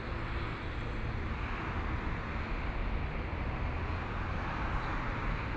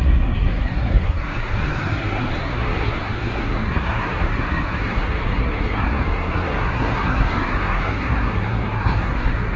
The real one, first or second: first